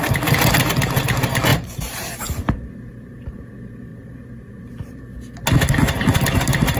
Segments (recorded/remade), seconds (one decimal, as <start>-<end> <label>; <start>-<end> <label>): 0.0-1.5 recorded; 1.5-2.3 remade; 2.3-2.9 recorded; 2.9-3.4 remade; 3.4-3.9 recorded; 3.9-5.0 remade; 5.0-6.8 recorded